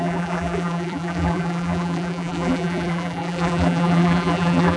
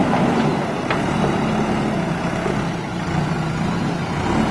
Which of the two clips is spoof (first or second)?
first